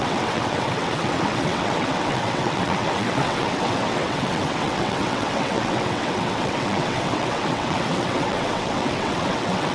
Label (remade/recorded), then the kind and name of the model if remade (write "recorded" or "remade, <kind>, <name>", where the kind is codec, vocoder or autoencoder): remade, vocoder, WaveNeXt